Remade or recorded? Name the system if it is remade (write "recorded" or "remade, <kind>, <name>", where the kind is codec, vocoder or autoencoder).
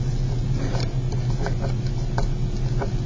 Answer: recorded